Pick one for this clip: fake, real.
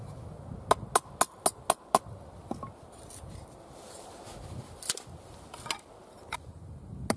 real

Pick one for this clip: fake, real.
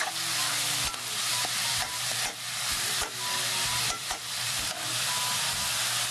real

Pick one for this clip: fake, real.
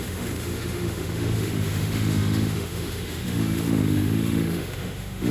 fake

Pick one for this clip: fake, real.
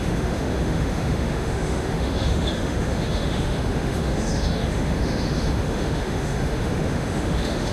fake